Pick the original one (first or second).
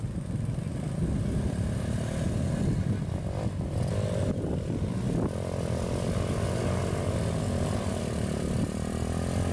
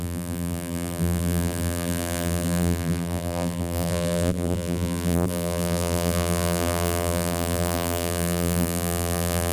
first